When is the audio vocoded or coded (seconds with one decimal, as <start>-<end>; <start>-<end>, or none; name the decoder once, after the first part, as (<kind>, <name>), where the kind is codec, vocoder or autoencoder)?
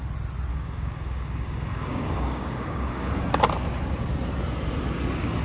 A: 0.5-3.1 (codec, DAC)